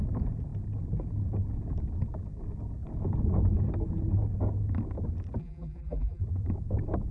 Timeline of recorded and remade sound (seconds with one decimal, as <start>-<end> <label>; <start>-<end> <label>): 0.0-5.4 recorded; 5.4-6.2 remade; 6.2-7.1 recorded